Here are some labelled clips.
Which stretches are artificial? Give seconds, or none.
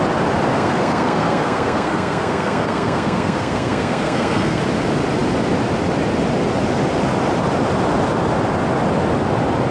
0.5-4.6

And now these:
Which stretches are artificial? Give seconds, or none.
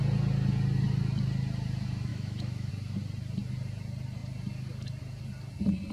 2.1-2.7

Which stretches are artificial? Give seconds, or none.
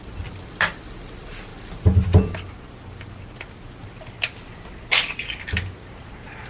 none